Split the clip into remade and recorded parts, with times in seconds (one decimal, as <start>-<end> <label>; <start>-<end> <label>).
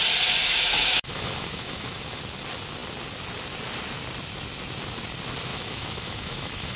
0.0-0.4 recorded; 0.4-2.2 remade; 2.2-5.5 recorded; 5.5-6.8 remade